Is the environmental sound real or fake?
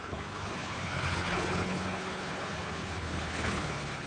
fake